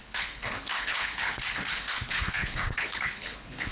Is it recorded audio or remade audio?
remade